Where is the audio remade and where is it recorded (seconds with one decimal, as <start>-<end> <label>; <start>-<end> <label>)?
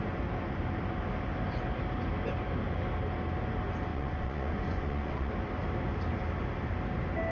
0.0-3.9 recorded; 3.9-5.3 remade; 5.3-7.3 recorded